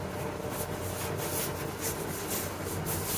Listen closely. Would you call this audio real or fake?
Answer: real